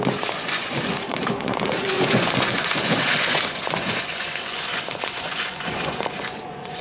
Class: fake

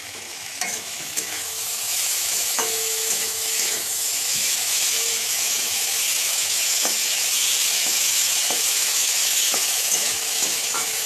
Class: fake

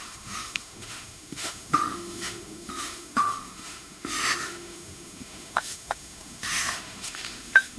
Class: fake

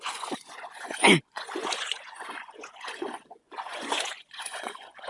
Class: fake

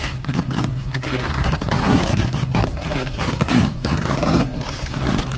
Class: fake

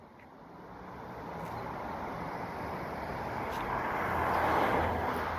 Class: real